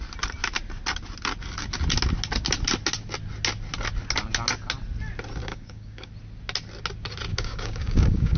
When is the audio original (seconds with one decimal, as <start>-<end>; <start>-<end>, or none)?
0.0-5.4; 6.1-7.3